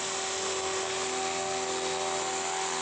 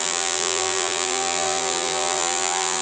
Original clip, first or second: first